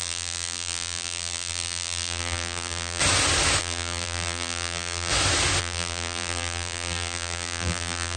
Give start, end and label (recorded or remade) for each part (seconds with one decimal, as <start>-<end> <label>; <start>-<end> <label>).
0.0-3.0 remade; 3.0-3.6 recorded; 3.6-5.1 remade; 5.1-5.6 recorded; 5.6-8.2 remade